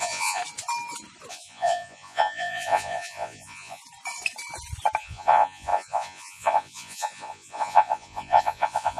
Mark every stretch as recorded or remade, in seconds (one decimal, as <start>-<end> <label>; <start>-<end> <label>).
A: 0.0-0.4 remade; 0.4-1.3 recorded; 1.3-3.8 remade; 3.8-5.0 recorded; 5.0-9.0 remade